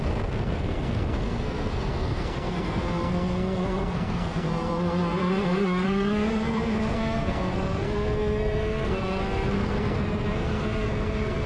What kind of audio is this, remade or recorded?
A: remade